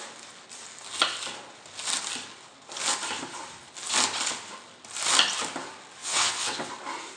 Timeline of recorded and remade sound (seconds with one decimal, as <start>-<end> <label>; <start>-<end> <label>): 0.0-6.0 recorded; 6.0-6.7 remade; 6.7-7.2 recorded

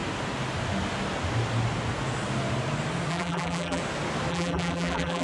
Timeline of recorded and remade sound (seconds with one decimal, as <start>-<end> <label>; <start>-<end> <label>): 0.0-3.1 recorded; 3.1-3.8 remade; 3.8-4.3 recorded; 4.3-5.2 remade

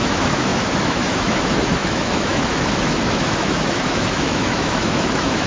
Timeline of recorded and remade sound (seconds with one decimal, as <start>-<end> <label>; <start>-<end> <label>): 0.0-5.5 remade

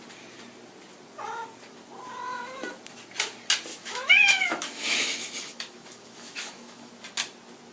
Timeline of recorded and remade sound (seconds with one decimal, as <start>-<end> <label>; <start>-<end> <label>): 0.0-3.7 recorded; 3.7-6.9 remade; 6.9-7.7 recorded

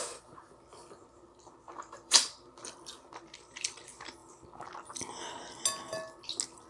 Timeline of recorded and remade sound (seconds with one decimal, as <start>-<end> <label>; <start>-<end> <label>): 0.0-1.7 recorded; 1.7-3.1 remade; 3.1-6.7 recorded